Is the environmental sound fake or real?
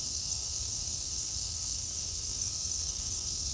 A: fake